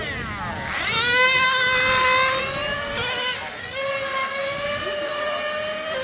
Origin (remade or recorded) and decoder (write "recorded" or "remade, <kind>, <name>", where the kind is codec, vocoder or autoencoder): recorded